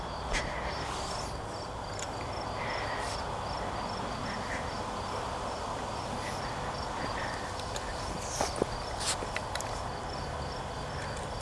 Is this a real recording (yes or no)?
yes